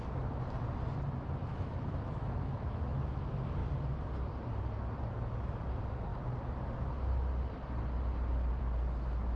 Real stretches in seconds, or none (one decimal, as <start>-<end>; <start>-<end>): 0.0-1.4; 3.2-9.4